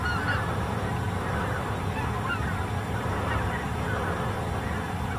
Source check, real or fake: real